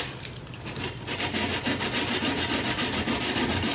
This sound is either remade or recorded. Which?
recorded